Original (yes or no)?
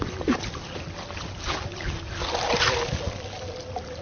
yes